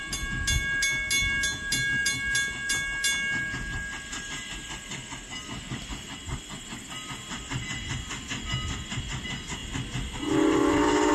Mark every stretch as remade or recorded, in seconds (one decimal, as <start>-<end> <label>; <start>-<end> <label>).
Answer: 0.0-11.1 recorded